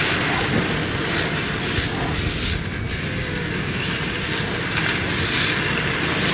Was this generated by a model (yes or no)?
no